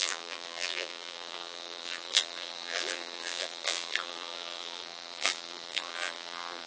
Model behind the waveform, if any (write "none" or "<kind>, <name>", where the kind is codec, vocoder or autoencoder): vocoder, BigVGAN v2